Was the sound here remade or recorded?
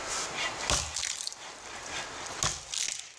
recorded